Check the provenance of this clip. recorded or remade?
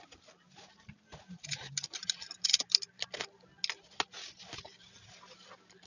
recorded